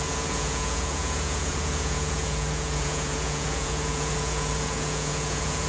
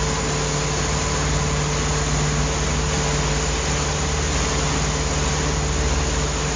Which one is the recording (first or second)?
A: second